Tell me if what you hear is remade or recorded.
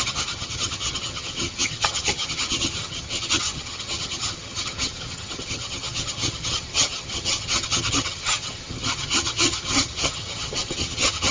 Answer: remade